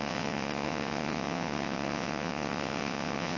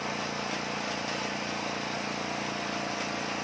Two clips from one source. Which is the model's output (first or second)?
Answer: first